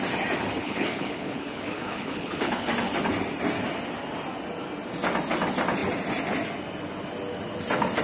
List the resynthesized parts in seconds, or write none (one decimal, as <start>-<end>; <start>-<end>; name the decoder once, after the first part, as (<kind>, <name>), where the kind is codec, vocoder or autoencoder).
0.6-2.7 (codec, HILCodec)